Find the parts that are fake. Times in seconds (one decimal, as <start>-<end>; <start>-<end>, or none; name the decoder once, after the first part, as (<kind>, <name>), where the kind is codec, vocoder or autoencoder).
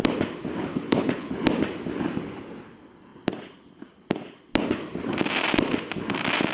0.7-1.3 (codec, HILCodec)